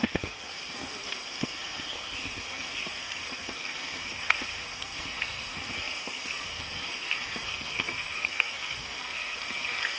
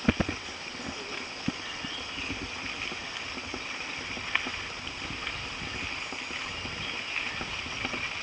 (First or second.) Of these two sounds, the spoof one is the first